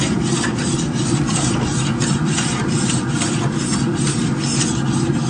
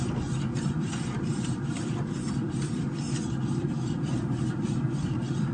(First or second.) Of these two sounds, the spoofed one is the second